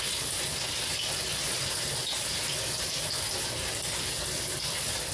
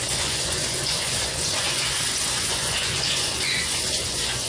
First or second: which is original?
first